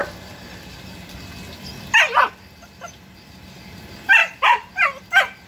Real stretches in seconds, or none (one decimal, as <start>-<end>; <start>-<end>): 0.0-4.2; 4.7-5.5